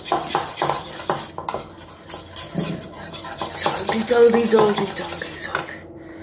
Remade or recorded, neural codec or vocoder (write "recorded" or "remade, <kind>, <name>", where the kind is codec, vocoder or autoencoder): recorded